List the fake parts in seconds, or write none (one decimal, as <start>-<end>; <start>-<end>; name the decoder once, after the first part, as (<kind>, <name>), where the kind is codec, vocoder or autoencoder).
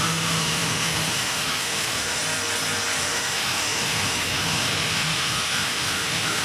0.0-2.2 (autoencoder, DAC-VAE); 3.0-6.4